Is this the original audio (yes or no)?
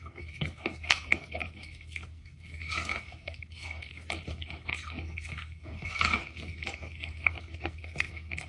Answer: no